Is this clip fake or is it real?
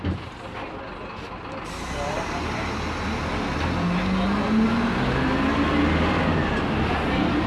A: real